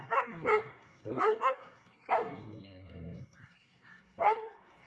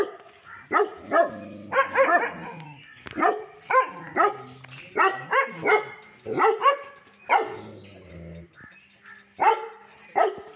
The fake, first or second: first